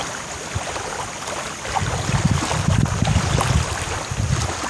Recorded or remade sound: recorded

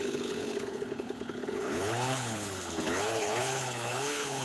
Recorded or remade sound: remade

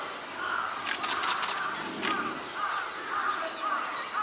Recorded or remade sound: recorded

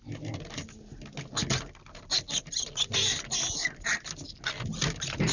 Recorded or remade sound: recorded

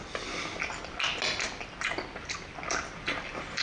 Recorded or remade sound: recorded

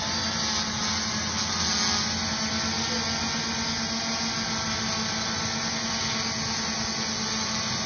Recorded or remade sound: recorded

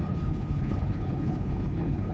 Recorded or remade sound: remade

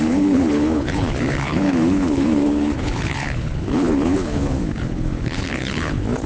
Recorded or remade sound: remade